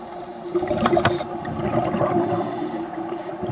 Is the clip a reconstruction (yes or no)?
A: yes